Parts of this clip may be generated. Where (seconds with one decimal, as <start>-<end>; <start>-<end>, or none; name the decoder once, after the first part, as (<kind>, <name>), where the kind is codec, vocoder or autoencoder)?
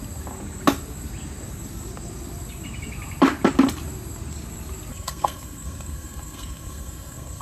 4.9-7.4 (codec, SNAC)